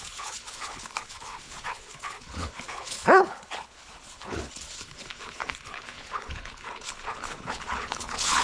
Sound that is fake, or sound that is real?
fake